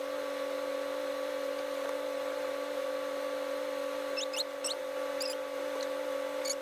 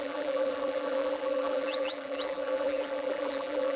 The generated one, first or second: second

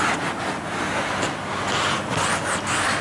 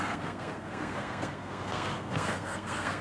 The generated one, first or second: second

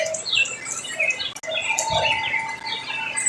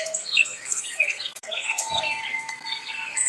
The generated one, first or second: second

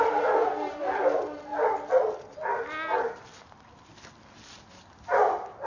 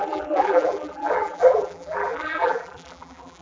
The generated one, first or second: second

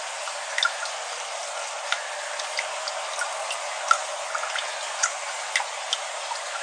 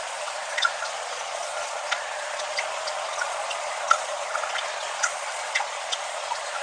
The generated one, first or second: second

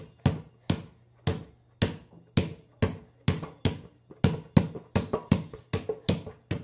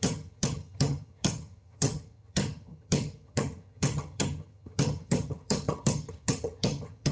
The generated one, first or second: second